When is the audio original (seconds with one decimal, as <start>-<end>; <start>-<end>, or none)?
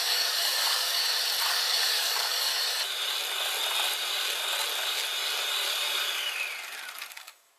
1.0-1.5; 2.5-7.1